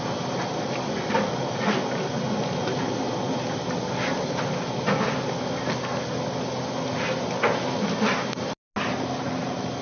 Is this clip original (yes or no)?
yes